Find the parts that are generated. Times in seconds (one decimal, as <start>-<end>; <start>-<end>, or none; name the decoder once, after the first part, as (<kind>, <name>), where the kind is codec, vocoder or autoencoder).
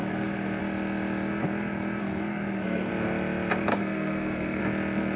0.0-0.6 (codec, SNAC); 2.0-2.9; 3.7-4.6